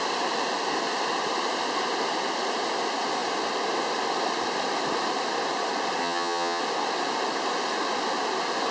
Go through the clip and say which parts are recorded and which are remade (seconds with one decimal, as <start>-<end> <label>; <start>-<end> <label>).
0.0-6.0 recorded; 6.0-6.6 remade; 6.6-8.7 recorded